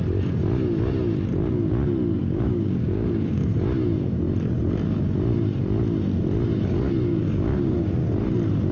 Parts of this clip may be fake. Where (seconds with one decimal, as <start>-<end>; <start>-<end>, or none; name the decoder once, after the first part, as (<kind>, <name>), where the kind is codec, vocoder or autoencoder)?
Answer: 2.2-3.6 (codec, DAC); 7.1-7.9